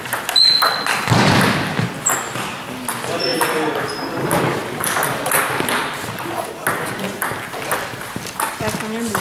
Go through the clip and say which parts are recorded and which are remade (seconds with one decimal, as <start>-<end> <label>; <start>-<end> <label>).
0.0-9.2 recorded